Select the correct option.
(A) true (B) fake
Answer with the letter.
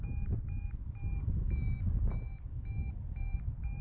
A